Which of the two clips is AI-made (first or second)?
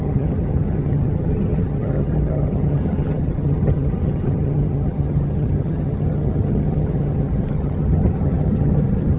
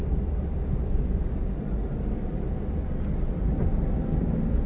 first